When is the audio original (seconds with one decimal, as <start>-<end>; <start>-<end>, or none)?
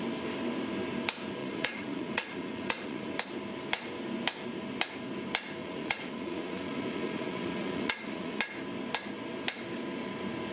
0.0-1.4; 3.1-5.6; 8.4-10.5